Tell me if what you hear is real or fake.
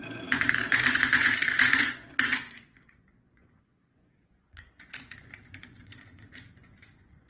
fake